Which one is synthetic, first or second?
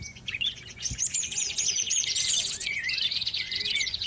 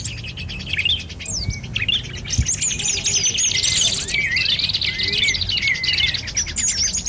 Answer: first